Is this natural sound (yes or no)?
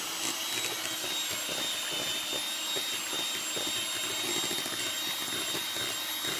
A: yes